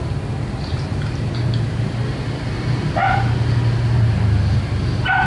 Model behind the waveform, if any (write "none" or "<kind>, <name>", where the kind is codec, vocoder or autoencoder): none